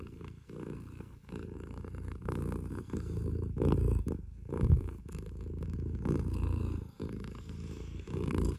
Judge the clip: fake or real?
fake